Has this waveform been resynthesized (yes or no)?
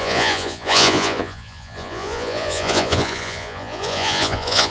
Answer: yes